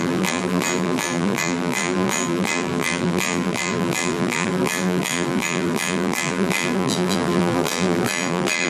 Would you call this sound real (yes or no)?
no